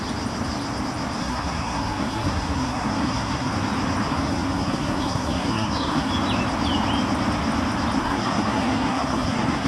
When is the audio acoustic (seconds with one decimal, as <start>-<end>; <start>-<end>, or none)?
0.0-1.2; 3.5-4.1; 6.1-8.0